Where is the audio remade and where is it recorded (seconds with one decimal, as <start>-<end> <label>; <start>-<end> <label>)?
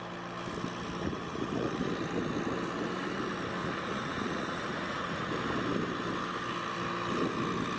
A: 0.0-1.0 recorded; 1.0-1.9 remade; 1.9-3.6 recorded; 3.6-5.3 remade; 5.3-7.8 recorded